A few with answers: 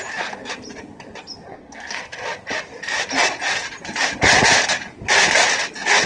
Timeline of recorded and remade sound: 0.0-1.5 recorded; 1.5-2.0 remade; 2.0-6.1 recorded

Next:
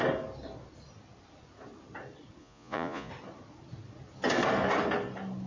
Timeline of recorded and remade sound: 0.0-2.4 recorded; 2.4-3.1 remade; 3.1-5.5 recorded

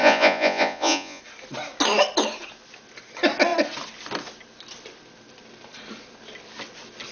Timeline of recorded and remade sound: 0.0-1.2 remade; 1.2-7.1 recorded

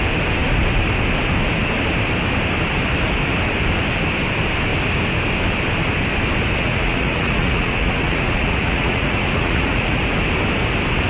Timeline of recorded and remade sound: 0.0-6.6 recorded; 6.6-10.0 remade; 10.0-11.1 recorded

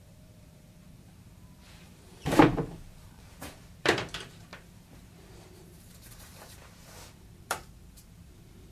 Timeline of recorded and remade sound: 0.0-8.7 remade